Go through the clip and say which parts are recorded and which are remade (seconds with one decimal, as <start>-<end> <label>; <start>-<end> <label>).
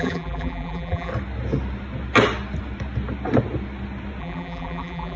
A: 0.0-1.1 remade; 1.1-4.2 recorded; 4.2-5.2 remade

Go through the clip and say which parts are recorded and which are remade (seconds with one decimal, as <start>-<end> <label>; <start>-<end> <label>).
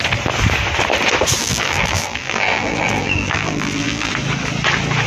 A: 0.0-1.4 recorded; 1.4-4.1 remade; 4.1-5.1 recorded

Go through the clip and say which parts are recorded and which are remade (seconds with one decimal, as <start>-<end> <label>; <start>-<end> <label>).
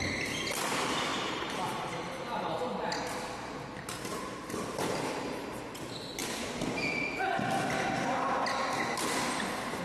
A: 0.0-1.1 recorded; 1.1-2.2 remade; 2.2-4.1 recorded; 4.1-5.8 remade; 5.8-9.8 recorded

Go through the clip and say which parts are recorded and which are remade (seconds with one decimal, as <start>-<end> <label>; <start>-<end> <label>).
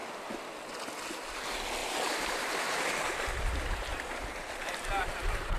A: 0.0-1.8 recorded; 1.8-5.6 remade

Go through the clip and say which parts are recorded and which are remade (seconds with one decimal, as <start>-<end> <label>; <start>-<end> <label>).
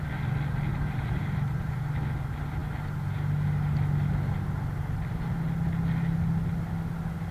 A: 0.0-0.7 recorded; 0.7-1.7 remade; 1.7-7.3 recorded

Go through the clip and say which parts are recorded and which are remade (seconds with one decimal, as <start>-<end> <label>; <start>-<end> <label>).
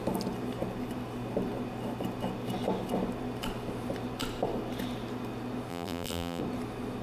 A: 0.0-5.7 recorded; 5.7-6.4 remade; 6.4-7.0 recorded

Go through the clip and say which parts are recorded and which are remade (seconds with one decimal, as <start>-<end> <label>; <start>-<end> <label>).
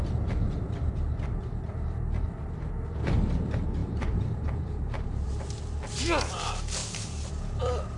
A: 0.0-3.8 recorded; 3.8-5.5 remade; 5.5-6.8 recorded; 6.8-7.3 remade; 7.3-8.0 recorded